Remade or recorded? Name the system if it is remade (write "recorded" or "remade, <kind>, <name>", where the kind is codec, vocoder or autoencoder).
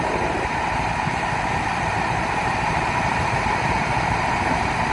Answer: remade, vocoder, BigVGAN v2